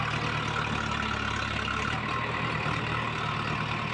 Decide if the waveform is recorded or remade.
recorded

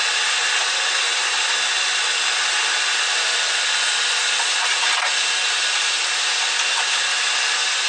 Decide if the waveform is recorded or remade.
recorded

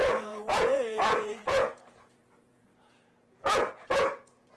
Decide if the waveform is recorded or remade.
remade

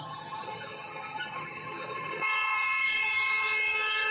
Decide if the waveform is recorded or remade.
remade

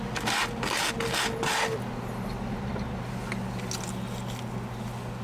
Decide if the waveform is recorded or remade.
recorded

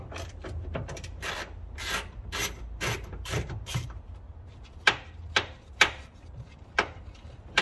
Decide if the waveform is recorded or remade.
remade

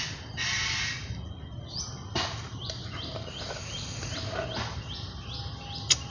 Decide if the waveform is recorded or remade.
recorded